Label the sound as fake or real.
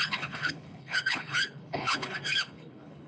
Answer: fake